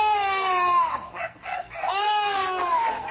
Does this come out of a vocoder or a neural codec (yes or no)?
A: yes